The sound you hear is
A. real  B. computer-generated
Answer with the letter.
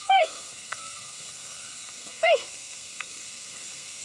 B